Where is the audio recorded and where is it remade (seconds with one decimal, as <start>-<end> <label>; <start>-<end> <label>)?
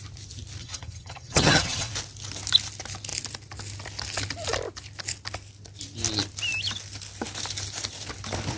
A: 0.0-0.6 recorded; 0.6-1.9 remade; 1.9-8.6 recorded